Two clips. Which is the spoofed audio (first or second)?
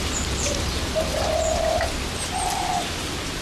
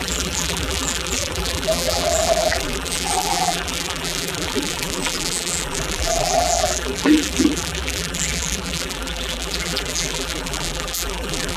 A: second